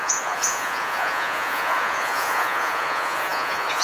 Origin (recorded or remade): remade